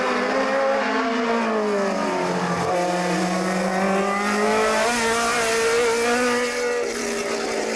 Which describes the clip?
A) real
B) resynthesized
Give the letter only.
A